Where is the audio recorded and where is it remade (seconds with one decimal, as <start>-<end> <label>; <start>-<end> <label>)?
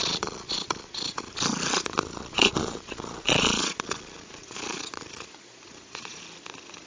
0.0-1.3 remade; 1.3-2.1 recorded; 2.1-6.2 remade; 6.2-6.9 recorded